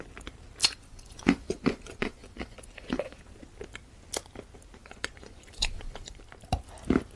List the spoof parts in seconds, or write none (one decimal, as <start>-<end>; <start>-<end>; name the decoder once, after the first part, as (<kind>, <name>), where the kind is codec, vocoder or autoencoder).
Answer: 0.6-3.2 (vocoder, Vocos); 4.8-6.2